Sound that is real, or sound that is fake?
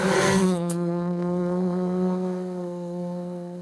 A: fake